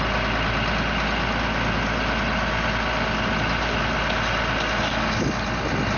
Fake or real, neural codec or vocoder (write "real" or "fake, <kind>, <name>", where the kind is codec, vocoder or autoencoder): real